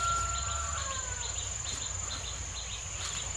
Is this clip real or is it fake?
real